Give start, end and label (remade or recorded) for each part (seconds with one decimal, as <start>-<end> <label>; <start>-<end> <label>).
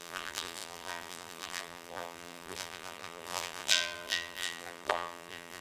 0.0-5.6 remade